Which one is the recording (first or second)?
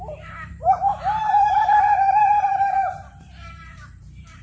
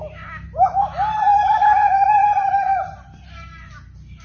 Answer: second